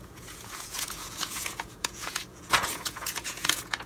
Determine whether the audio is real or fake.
fake